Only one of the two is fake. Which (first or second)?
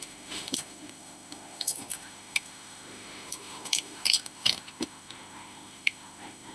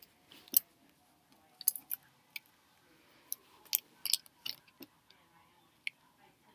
first